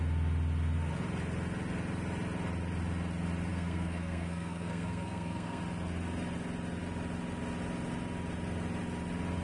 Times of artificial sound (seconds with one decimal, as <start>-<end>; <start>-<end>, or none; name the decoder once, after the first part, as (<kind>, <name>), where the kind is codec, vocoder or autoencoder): 3.5-5.6 (codec, SNAC)